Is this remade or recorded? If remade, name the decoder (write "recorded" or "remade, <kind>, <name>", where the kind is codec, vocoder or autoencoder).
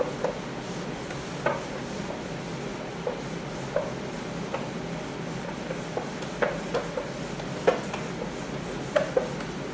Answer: recorded